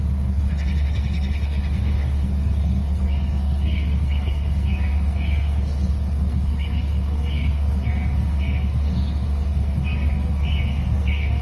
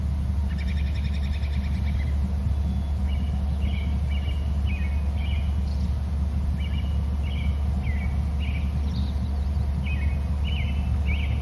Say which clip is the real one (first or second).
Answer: second